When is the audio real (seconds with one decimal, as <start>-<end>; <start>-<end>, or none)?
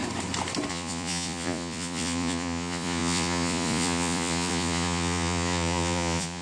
0.0-0.7